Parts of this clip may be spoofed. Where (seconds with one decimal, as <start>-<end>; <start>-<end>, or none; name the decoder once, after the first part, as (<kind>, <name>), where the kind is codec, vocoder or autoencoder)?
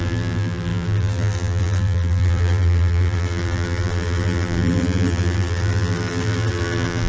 0.0-7.1 (vocoder, BigVGAN v2)